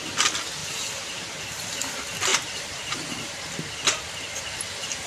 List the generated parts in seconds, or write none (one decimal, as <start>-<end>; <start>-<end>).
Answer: 2.3-3.4